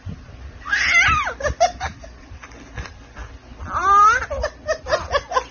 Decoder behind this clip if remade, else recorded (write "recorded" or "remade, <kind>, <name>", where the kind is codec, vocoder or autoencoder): recorded